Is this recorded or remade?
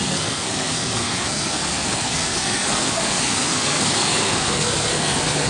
remade